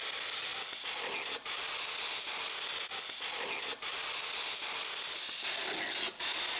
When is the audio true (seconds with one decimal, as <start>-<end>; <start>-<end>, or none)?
0.0-6.6